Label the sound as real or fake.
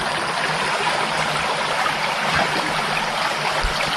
real